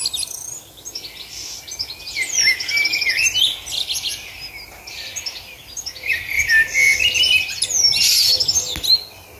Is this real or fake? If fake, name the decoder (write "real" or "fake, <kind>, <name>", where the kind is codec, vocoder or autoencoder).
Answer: real